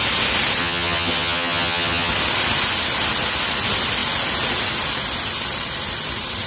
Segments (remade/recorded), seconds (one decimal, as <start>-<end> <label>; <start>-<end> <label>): 0.0-0.6 recorded; 0.6-2.1 remade; 2.1-6.5 recorded